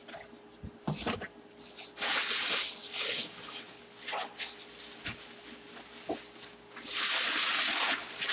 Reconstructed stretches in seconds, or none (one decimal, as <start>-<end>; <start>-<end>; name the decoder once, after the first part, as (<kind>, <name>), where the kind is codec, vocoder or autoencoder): 2.8-3.8 (codec, DAC)